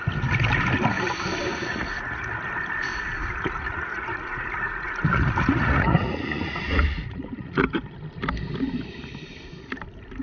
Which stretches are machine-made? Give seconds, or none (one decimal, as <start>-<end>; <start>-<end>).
1.5-2.3; 3.2-7.6